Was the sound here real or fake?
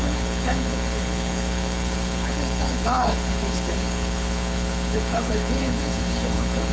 fake